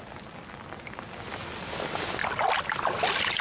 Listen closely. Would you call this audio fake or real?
real